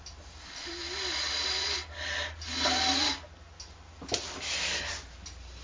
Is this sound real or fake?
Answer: real